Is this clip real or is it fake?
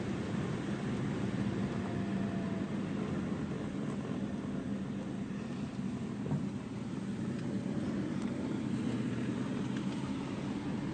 real